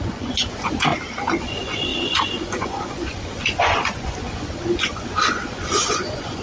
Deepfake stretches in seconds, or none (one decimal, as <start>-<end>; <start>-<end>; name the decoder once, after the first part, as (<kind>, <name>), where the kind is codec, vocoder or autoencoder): 0.0-0.9 (vocoder, Vocos); 1.4-6.4